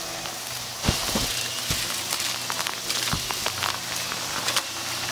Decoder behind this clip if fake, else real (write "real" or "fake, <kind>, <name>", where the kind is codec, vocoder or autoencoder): real